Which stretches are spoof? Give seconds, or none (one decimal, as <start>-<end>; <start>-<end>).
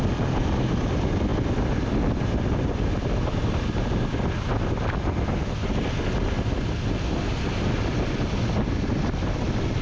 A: none